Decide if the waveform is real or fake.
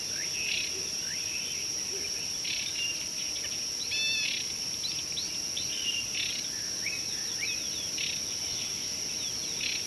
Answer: real